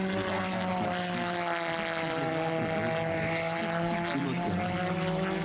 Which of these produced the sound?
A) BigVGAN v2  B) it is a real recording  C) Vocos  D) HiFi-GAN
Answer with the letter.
B